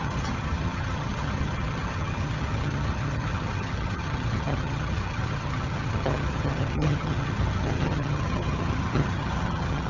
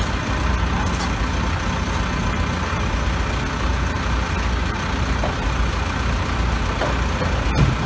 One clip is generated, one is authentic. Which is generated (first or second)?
first